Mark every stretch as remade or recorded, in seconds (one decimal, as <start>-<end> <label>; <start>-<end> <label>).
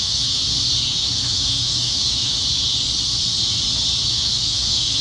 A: 0.0-0.4 remade; 0.4-0.9 recorded; 0.9-2.4 remade; 2.4-4.0 recorded; 4.0-5.0 remade